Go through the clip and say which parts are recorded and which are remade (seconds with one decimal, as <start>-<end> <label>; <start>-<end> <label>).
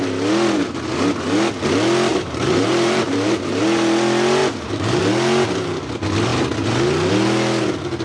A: 0.0-2.1 recorded; 2.1-3.6 remade; 3.6-4.4 recorded; 4.4-5.0 remade; 5.0-8.0 recorded